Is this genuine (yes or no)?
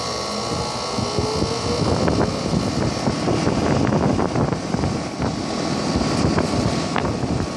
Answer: yes